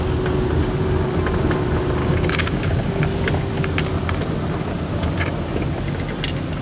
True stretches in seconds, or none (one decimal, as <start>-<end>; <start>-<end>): 0.0-2.0; 3.0-6.6